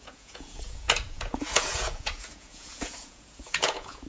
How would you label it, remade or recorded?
remade